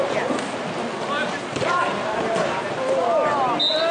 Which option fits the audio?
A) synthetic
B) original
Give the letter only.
B